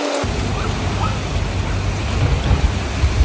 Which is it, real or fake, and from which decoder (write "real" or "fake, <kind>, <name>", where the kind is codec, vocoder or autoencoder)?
real